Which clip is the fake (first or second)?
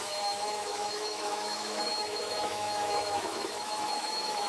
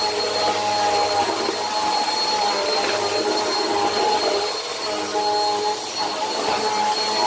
first